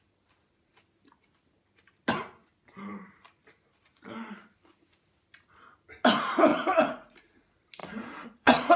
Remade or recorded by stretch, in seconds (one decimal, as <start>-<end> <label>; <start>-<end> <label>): 0.0-6.5 recorded; 6.5-7.2 remade; 7.2-7.8 recorded; 7.8-8.8 remade